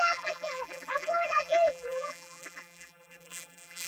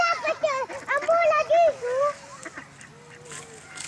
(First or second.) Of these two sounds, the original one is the second